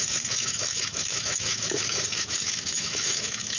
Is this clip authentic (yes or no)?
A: no